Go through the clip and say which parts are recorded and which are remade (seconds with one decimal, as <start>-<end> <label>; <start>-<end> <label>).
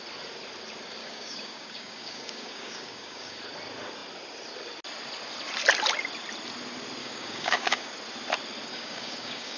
0.0-1.0 recorded; 1.0-3.4 remade; 3.4-7.0 recorded; 7.0-7.9 remade; 7.9-8.7 recorded; 8.7-9.6 remade